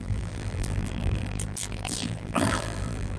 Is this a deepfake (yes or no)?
yes